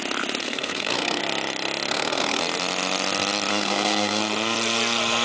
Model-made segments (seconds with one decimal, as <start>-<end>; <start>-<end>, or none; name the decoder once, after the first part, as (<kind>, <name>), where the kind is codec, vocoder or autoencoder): 0.4-1.2 (codec, SNAC); 1.9-2.4; 3.5-4.2